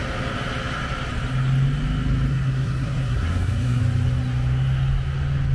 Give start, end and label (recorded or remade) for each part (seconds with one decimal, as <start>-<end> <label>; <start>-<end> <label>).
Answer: 0.0-2.3 recorded; 2.3-3.8 remade; 3.8-5.5 recorded